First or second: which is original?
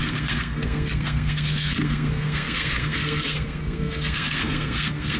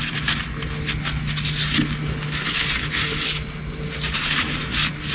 second